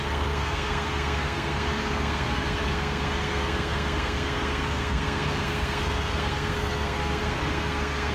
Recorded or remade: remade